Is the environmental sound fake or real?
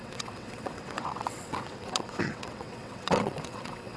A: fake